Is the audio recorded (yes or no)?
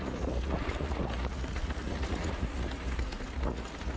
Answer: no